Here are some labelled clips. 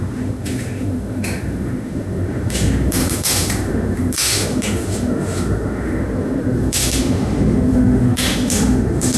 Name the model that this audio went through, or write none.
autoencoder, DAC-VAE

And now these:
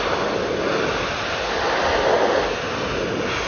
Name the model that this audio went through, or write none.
none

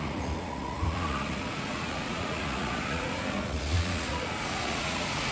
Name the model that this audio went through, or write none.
vocoder, Vocos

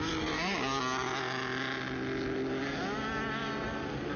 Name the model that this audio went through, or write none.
none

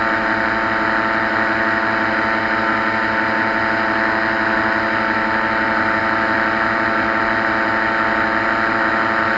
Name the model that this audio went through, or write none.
none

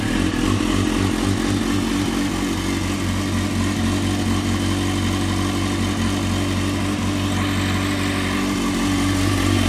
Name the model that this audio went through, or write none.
none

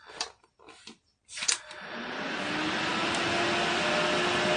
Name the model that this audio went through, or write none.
none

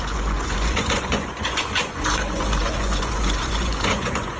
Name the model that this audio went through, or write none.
vocoder, Vocos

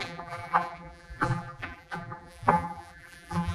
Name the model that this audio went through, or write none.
vocoder, BigVGAN v2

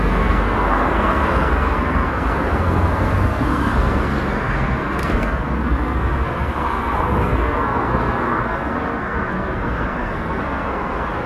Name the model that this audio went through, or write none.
codec, SNAC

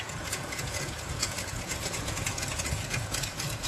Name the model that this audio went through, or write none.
vocoder, Vocos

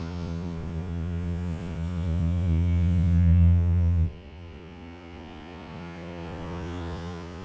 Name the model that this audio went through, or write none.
vocoder, Vocos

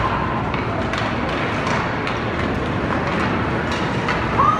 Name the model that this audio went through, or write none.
none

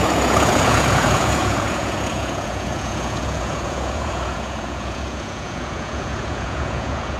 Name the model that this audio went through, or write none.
vocoder, Vocos